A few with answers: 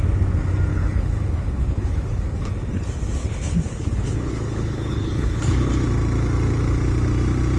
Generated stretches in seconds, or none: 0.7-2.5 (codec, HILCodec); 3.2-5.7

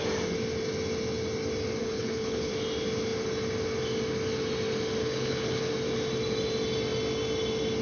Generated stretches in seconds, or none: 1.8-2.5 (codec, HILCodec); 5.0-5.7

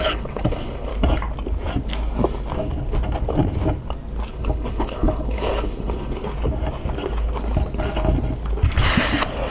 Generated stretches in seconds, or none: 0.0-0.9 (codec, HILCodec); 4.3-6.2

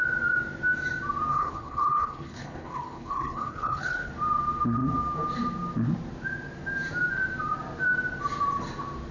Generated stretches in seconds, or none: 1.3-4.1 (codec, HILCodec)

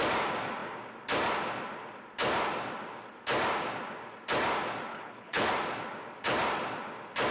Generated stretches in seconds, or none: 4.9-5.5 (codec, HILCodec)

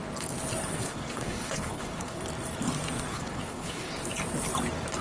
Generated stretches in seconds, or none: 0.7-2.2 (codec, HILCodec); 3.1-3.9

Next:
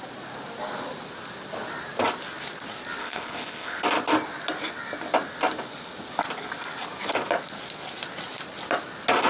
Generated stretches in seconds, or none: 3.0-3.8 (codec, HILCodec)